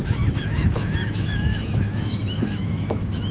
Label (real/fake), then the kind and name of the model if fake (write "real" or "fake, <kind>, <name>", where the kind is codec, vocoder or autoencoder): fake, autoencoder, DAC-VAE